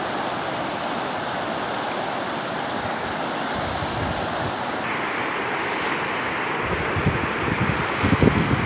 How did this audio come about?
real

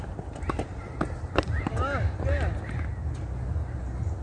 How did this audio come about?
real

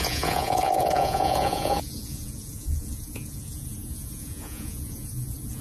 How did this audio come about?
fake